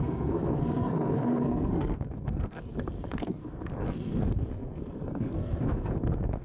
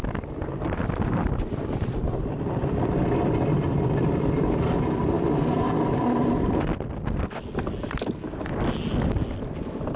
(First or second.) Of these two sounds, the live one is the second